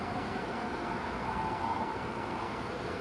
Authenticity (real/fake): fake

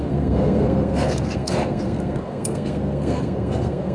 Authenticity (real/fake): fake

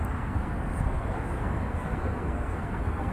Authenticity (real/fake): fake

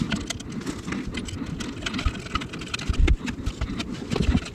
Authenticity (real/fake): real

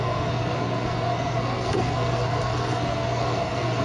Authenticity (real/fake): fake